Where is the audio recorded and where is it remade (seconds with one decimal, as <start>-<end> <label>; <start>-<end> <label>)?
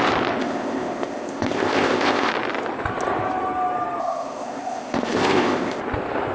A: 0.0-0.4 recorded; 0.4-2.3 remade; 2.3-4.0 recorded; 4.0-5.8 remade; 5.8-6.3 recorded